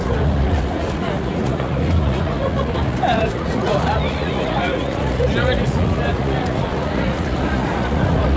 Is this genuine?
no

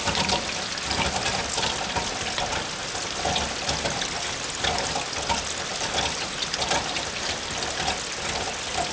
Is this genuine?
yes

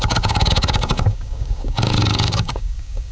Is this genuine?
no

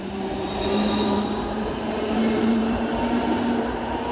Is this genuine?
no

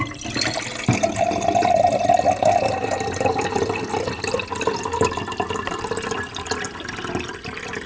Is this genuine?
yes